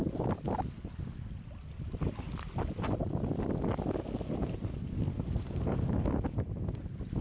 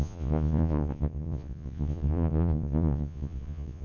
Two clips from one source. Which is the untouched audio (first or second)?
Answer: first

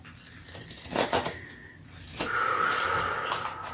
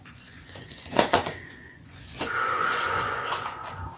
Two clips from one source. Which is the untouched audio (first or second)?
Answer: first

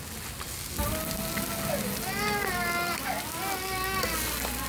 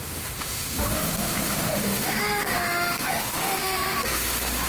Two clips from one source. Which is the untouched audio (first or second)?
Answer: first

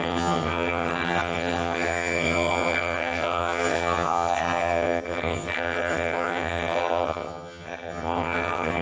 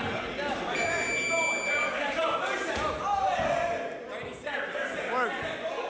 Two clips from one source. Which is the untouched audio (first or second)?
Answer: second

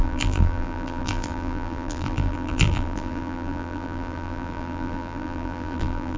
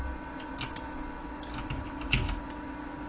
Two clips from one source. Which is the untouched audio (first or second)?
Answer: second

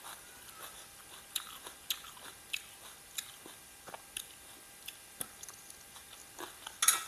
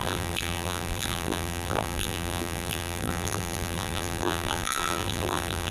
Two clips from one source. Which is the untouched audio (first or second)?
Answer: first